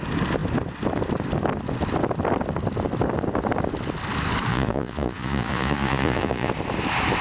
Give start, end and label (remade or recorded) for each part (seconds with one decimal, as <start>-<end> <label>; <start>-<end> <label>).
0.0-4.5 recorded; 4.5-6.5 remade; 6.5-7.2 recorded